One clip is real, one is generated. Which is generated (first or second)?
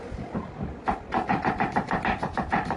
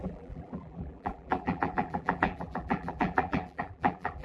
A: second